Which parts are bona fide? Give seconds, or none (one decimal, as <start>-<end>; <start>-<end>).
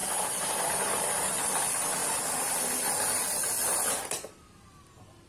0.0-5.3